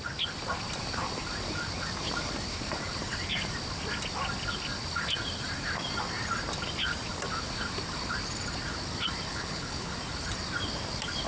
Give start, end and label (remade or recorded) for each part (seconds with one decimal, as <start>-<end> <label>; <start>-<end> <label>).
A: 0.0-9.3 recorded; 9.3-9.9 remade; 9.9-11.3 recorded